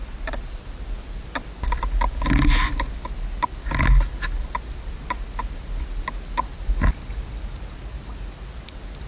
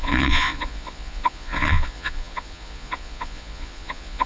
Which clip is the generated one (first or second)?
second